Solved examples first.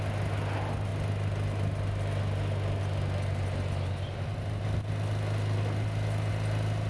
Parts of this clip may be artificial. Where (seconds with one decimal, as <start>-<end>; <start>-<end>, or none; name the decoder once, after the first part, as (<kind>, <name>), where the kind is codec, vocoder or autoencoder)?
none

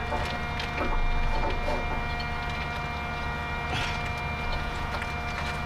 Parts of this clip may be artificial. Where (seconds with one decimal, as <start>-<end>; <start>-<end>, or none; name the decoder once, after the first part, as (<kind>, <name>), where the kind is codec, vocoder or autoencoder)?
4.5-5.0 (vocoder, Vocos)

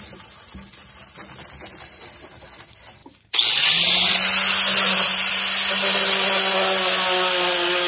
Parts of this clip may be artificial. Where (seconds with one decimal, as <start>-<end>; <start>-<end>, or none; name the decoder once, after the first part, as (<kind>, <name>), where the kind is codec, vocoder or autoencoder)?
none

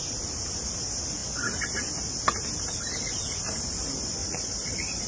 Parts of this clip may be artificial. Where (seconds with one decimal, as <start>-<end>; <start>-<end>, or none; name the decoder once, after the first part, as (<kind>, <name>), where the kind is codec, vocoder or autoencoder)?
4.2-5.1 (vocoder, Vocos)

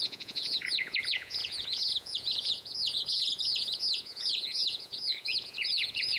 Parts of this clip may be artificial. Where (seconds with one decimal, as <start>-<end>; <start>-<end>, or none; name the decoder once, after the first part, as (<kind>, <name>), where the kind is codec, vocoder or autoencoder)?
0.0-6.2 (vocoder, Vocos)